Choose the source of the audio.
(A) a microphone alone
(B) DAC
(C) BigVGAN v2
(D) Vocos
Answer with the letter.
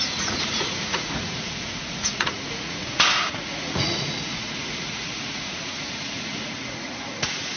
D